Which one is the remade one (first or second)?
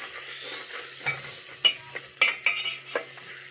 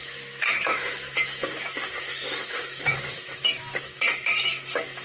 second